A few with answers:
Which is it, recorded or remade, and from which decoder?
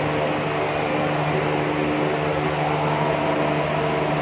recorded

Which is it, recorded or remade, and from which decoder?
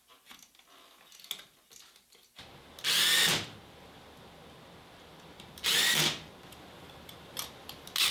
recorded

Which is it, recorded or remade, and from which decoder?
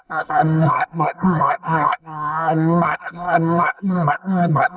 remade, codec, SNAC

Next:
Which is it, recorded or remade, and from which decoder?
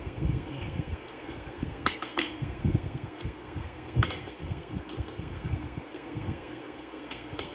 remade, codec, SNAC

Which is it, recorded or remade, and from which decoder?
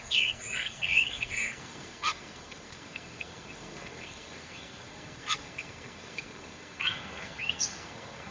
remade, codec, SNAC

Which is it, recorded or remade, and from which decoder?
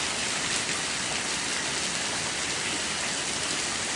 recorded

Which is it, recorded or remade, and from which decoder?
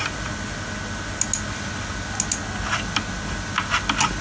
recorded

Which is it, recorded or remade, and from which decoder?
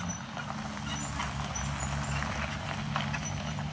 recorded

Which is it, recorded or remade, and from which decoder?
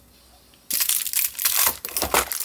recorded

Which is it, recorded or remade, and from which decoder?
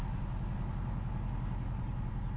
recorded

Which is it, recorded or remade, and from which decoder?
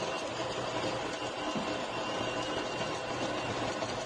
recorded